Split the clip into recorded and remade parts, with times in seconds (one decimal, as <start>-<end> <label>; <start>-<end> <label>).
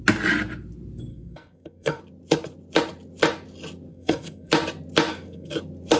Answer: 0.0-1.1 recorded; 1.1-2.0 remade; 2.0-3.9 recorded; 3.9-4.5 remade; 4.5-5.1 recorded; 5.1-5.6 remade; 5.6-6.0 recorded